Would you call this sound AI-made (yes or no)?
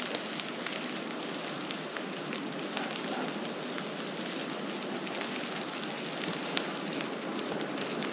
no